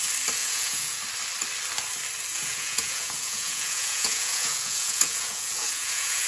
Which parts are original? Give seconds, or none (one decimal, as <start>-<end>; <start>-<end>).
0.0-0.4; 1.0-2.3